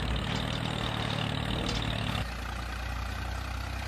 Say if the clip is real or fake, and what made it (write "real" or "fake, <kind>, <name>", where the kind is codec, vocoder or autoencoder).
real